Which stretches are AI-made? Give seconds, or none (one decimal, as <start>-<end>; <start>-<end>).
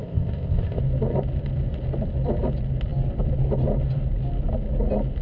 0.0-0.8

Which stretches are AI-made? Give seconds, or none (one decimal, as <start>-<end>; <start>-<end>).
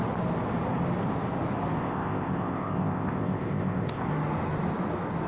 1.8-4.1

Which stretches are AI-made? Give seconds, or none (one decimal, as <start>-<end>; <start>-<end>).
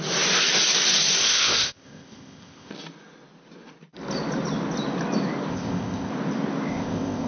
1.2-2.7; 5.5-6.1; 6.7-7.3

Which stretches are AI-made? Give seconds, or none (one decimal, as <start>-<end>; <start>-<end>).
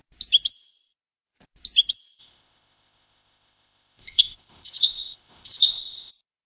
2.2-6.1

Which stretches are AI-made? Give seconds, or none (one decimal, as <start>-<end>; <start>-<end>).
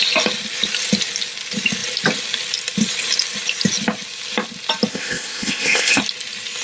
4.9-6.0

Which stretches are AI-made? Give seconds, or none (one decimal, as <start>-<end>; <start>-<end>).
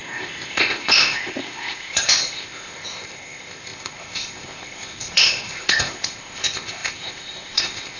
0.0-8.0